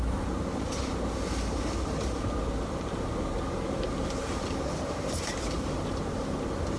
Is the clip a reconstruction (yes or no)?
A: no